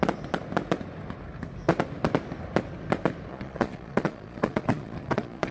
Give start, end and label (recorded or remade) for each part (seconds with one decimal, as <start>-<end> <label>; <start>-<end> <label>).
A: 0.0-3.3 recorded; 3.3-5.5 remade